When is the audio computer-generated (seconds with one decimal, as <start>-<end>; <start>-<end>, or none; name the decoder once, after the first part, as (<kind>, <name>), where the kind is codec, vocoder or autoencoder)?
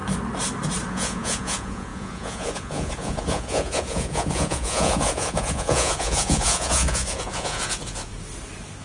0.9-8.1 (vocoder, Vocos)